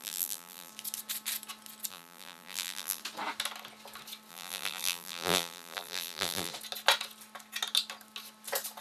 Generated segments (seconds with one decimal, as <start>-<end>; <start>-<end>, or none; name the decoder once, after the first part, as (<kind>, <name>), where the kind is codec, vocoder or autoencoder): 0.0-0.7 (vocoder, BigVGAN v2); 1.9-3.0; 4.3-6.5